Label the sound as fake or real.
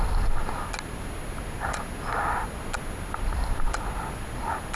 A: real